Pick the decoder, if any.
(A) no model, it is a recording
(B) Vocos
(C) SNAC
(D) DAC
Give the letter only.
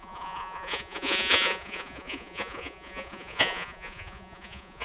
B